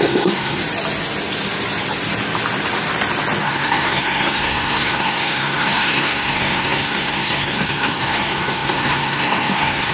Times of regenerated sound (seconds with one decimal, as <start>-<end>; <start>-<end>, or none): 0.0-0.6; 3.4-9.9